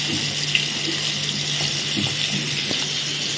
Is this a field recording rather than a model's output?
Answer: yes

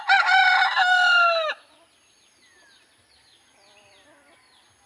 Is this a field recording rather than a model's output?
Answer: yes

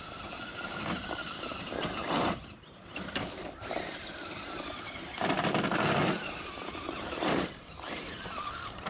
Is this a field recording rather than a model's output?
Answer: no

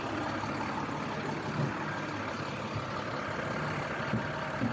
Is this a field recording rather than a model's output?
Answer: yes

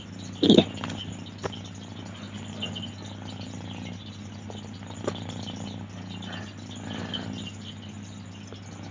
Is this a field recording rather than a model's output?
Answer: yes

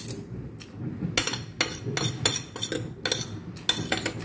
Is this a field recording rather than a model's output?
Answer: yes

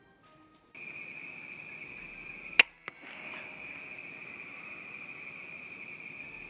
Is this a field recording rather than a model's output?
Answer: yes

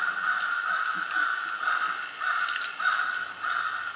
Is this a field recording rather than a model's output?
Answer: yes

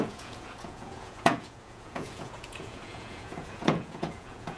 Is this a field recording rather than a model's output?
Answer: no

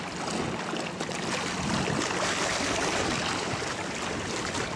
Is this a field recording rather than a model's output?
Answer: yes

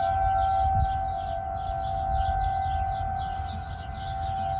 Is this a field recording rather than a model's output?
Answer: yes